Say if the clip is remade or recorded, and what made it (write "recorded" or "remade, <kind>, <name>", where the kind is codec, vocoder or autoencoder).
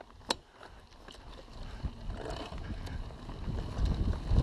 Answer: recorded